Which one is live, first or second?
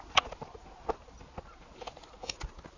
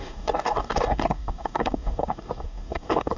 first